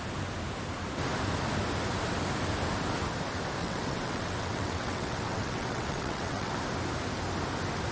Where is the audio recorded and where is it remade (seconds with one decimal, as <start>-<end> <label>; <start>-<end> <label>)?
0.0-3.6 recorded; 3.6-6.5 remade; 6.5-7.9 recorded